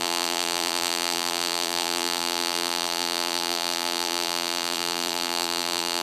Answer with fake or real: fake